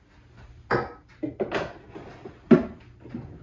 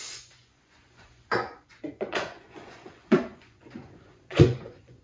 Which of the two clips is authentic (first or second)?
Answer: first